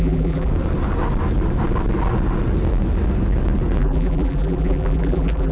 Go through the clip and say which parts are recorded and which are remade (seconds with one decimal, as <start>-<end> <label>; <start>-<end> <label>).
0.0-0.5 remade; 0.5-3.8 recorded; 3.8-5.5 remade